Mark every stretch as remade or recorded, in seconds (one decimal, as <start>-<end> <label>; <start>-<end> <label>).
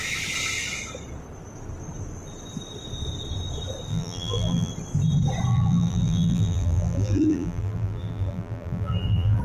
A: 0.0-3.9 recorded; 3.9-4.7 remade; 4.7-5.5 recorded; 5.5-9.4 remade